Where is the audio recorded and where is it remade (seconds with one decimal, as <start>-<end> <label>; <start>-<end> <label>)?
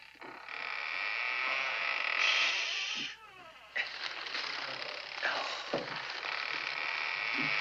0.0-2.3 recorded; 2.3-3.8 remade; 3.8-7.6 recorded